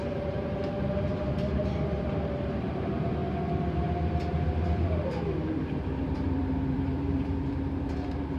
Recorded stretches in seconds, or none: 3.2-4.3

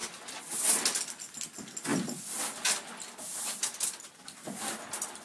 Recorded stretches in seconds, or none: 0.0-5.2

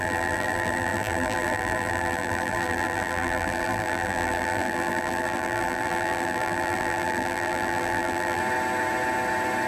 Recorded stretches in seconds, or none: 8.4-9.7

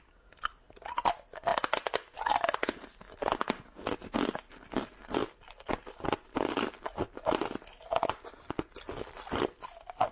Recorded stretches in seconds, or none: 0.0-1.5; 3.6-5.2; 9.4-10.1